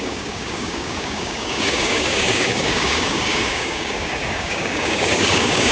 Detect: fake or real fake